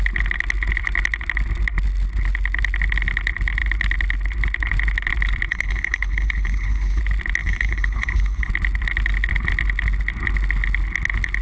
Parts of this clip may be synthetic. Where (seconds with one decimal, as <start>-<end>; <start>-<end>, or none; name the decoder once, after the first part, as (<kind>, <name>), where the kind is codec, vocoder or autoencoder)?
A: 5.5-7.0 (codec, HILCodec); 7.4-8.5